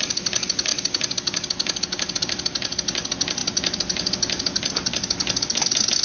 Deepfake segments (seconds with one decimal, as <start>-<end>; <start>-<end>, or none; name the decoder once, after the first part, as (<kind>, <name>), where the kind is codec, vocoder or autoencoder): none